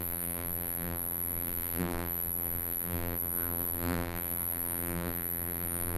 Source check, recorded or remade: remade